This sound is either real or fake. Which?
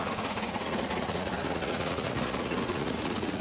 fake